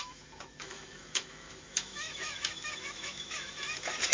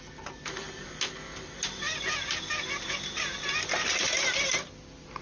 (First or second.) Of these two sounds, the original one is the second